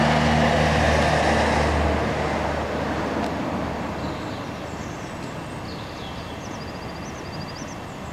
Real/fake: real